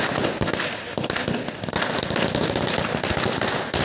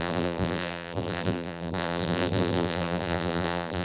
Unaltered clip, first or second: first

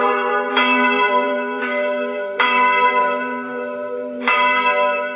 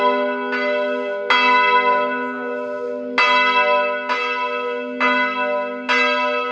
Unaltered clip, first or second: second